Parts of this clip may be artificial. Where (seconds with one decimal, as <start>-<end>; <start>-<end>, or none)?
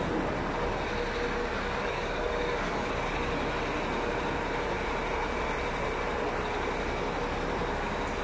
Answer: 1.4-2.9